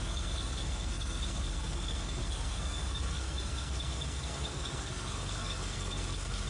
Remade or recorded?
remade